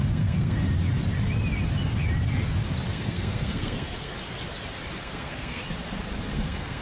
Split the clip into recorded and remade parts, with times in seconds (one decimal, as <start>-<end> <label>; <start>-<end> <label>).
0.0-0.6 remade; 0.6-2.9 recorded; 2.9-4.1 remade; 4.1-5.0 recorded; 5.0-5.6 remade; 5.6-6.3 recorded; 6.3-6.8 remade